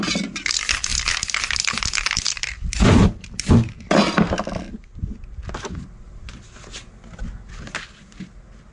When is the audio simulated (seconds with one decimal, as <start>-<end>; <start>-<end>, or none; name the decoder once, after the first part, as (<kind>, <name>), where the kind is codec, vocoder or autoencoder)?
none